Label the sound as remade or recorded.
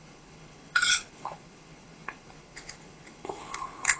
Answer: remade